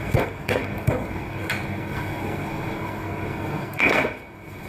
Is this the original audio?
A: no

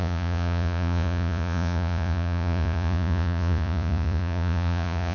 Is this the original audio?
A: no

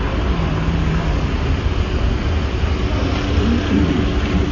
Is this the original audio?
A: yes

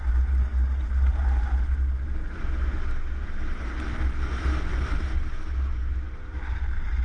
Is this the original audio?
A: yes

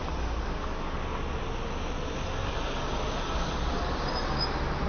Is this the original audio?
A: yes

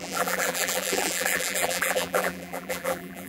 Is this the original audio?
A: no